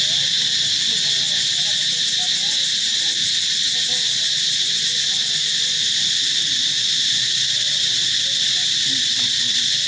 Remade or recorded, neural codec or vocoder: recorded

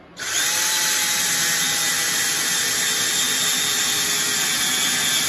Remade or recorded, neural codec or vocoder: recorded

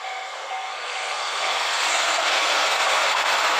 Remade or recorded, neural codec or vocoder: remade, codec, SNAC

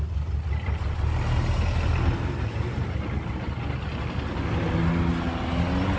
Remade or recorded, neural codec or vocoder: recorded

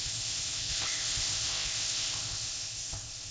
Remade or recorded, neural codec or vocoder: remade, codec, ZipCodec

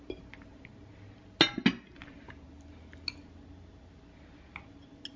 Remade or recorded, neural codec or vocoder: recorded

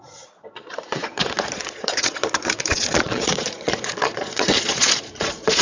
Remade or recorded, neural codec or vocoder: remade, vocoder, Vocos